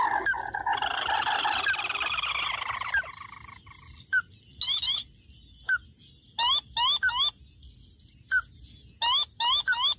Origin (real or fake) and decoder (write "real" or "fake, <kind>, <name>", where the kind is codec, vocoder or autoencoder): real